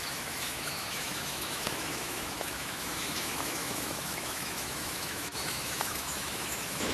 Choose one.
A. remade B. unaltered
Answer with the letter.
A